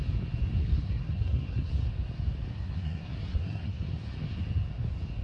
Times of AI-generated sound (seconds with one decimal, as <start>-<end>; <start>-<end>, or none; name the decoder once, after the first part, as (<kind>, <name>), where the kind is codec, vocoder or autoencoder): 0.6-1.7 (codec, SNAC); 2.5-3.9